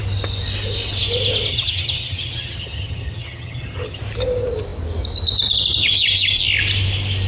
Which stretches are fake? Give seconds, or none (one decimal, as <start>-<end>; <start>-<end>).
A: 1.5-4.0